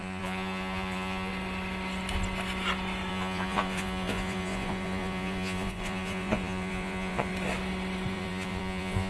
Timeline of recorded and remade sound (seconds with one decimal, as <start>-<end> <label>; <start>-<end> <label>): 0.0-1.3 remade; 1.3-3.1 recorded; 3.1-7.3 remade; 7.3-8.1 recorded; 8.1-9.1 remade